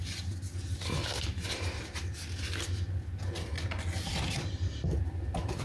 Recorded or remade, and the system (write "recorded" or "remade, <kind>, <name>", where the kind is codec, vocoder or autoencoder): recorded